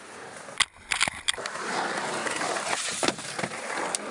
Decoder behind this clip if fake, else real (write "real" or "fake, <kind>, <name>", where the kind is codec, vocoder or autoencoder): real